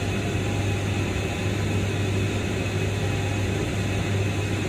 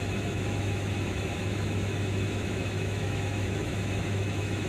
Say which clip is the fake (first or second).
second